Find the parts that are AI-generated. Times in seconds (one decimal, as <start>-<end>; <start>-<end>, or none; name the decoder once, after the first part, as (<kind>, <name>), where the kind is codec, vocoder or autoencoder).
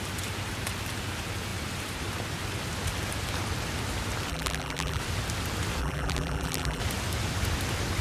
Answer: 4.3-5.0 (vocoder, BigVGAN v2); 5.8-6.8